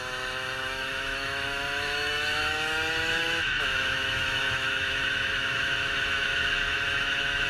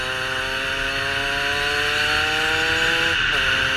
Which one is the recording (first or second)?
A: second